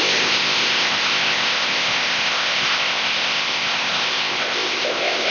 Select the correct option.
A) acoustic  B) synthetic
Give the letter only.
B